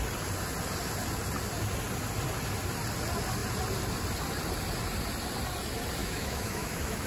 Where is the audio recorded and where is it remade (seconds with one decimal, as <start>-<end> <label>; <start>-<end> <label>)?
0.0-6.0 recorded; 6.0-7.1 remade